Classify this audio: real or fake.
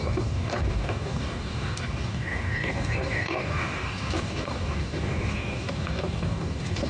fake